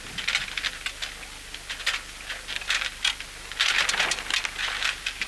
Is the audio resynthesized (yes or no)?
no